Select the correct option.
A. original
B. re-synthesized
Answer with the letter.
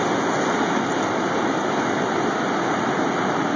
A